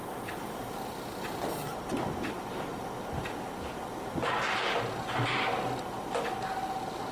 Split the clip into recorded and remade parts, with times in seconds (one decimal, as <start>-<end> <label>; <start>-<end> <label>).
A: 0.0-0.6 remade; 0.6-7.1 recorded